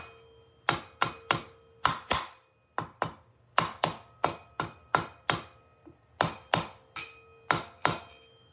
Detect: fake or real real